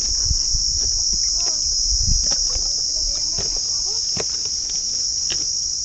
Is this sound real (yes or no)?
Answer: yes